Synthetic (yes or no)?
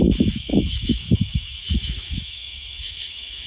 yes